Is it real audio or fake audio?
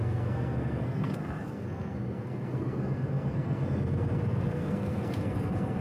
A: fake